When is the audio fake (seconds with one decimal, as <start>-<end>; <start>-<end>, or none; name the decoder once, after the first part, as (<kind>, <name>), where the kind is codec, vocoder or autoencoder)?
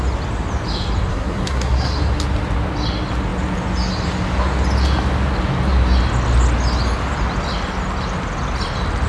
1.1-1.9 (codec, SNAC)